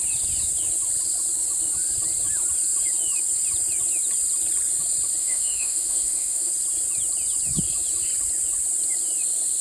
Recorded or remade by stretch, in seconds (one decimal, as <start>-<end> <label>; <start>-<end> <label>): 0.0-5.2 recorded; 5.2-6.5 remade; 6.5-9.6 recorded